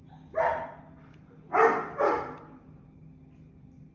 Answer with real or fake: real